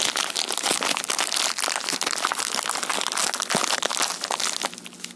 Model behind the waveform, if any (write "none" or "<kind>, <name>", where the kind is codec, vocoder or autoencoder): none